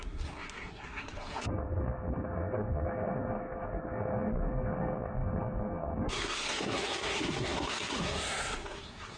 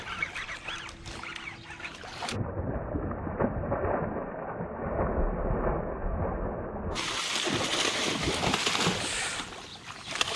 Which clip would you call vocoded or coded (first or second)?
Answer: first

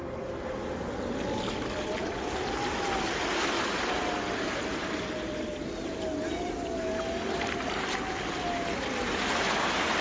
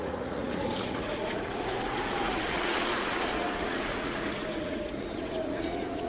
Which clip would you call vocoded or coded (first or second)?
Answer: second